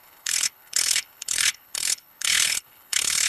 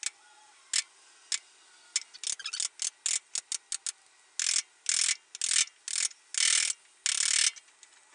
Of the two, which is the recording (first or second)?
second